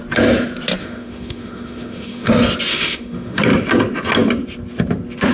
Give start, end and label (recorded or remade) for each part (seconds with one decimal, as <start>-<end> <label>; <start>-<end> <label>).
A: 0.0-0.8 recorded; 0.8-2.3 remade; 2.3-2.7 recorded; 2.7-3.4 remade; 3.4-5.3 recorded

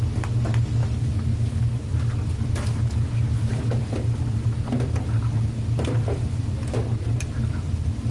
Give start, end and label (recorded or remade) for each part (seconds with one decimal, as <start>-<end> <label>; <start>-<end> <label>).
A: 0.0-8.1 recorded

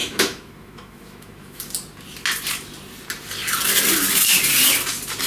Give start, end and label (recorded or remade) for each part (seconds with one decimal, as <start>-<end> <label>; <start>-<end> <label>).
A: 0.0-1.6 remade; 1.6-5.3 recorded

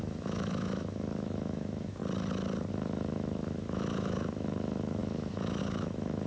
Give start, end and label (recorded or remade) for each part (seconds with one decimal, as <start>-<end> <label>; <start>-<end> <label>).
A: 0.0-2.0 remade; 2.0-2.7 recorded; 2.7-6.3 remade

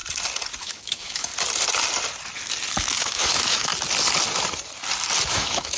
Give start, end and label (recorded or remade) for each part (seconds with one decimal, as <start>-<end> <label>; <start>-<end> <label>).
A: 0.0-0.6 recorded; 0.6-1.3 remade; 1.3-2.8 recorded; 2.8-3.7 remade; 3.7-5.3 recorded; 5.3-5.8 remade

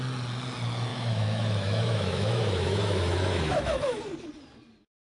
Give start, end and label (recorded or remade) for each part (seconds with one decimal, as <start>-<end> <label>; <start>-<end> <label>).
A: 0.0-0.9 recorded; 0.9-4.0 remade; 4.0-5.2 recorded